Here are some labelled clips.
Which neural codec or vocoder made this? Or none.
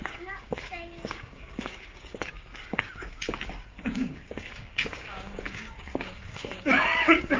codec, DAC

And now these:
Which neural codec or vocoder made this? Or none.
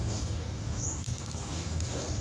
codec, DAC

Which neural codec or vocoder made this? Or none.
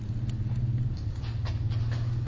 none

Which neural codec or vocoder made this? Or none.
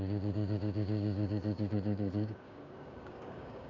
codec, DAC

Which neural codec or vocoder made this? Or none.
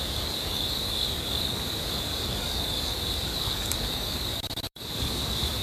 codec, DAC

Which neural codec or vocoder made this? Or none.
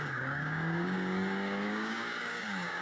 codec, DAC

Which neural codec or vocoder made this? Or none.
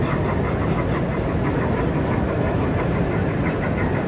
none